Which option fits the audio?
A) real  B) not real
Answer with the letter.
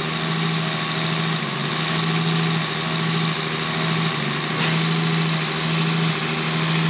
A